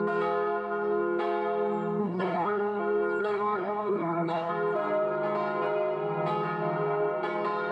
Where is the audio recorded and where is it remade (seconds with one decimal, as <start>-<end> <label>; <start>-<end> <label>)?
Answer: 0.0-2.0 recorded; 2.0-2.8 remade; 2.8-3.2 recorded; 3.2-4.5 remade; 4.5-7.7 recorded